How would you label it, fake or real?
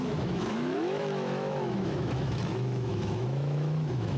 fake